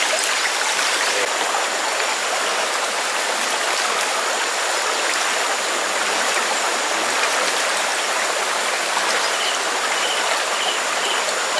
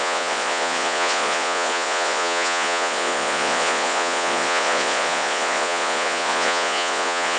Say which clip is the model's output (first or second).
second